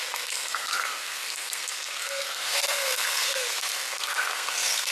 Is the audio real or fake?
fake